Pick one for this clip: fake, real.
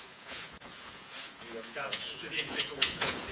fake